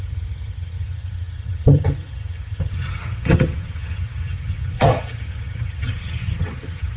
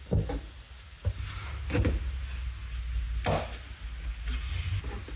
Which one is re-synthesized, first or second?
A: first